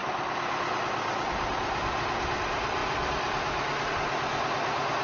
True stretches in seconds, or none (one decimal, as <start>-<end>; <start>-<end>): 0.0-2.8; 3.9-5.0